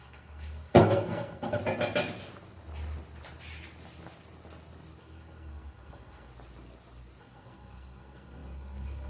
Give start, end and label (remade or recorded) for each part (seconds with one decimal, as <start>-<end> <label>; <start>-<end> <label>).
0.0-1.6 remade; 1.6-5.0 recorded; 5.0-6.3 remade; 6.3-7.2 recorded; 7.2-9.1 remade